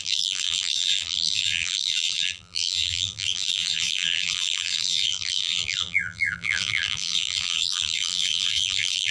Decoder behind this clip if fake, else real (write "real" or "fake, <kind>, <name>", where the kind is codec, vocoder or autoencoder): fake, vocoder, BigVGAN v2